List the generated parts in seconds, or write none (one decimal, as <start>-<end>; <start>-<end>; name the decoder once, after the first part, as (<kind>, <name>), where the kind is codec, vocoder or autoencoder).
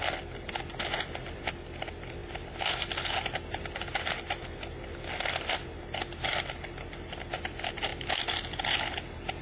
none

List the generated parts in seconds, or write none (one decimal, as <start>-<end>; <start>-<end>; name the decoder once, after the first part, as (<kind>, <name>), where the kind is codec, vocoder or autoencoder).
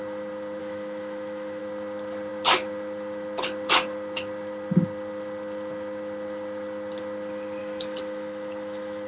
0.6-1.6 (autoencoder, DAC-VAE); 7.6-9.1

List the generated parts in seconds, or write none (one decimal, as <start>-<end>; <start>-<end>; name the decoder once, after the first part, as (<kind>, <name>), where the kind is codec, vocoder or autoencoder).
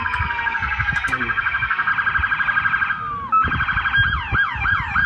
0.0-1.9 (codec, SNAC)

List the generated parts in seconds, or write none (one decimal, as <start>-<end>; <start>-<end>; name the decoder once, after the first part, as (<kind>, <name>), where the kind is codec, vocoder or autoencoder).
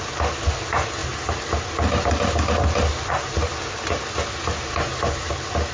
none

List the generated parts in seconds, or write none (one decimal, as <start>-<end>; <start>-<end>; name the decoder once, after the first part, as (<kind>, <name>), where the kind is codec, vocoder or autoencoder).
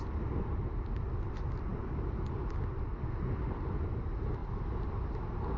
none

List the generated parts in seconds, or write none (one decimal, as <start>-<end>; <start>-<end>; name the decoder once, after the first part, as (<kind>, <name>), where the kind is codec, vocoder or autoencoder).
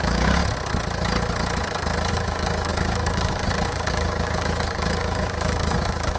0.0-0.4 (codec, DAC); 2.1-6.2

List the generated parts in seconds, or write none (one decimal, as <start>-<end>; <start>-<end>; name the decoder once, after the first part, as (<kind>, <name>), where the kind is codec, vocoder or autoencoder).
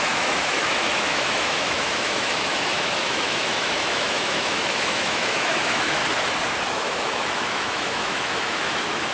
0.0-6.0 (autoencoder, DAC-VAE); 6.7-9.1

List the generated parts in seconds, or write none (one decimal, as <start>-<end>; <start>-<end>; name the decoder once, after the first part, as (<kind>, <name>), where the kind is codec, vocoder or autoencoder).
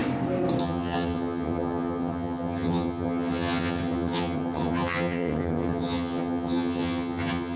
0.6-7.6 (vocoder, HiFi-GAN)